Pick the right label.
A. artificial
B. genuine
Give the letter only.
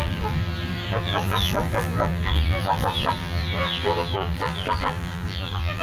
A